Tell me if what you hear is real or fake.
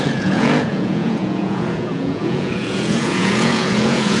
fake